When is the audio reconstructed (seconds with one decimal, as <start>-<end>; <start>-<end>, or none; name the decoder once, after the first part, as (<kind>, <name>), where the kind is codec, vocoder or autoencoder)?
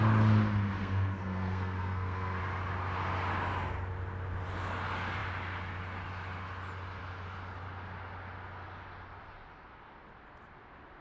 0.8-2.4 (codec, SNAC)